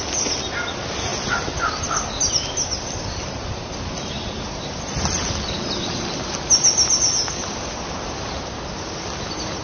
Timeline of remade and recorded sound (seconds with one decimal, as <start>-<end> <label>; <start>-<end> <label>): 0.0-9.6 recorded